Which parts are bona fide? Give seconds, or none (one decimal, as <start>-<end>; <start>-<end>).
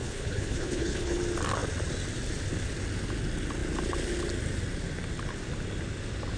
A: 1.2-6.4